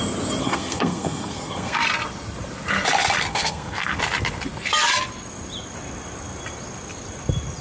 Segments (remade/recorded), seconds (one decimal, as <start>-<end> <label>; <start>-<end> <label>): 0.0-0.4 recorded; 0.4-1.8 remade; 1.8-3.3 recorded; 3.3-4.0 remade; 4.0-7.6 recorded